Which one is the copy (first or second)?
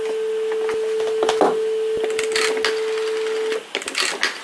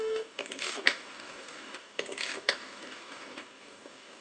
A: second